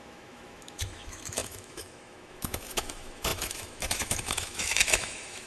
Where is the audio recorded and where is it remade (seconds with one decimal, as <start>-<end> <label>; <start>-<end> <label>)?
0.0-5.5 remade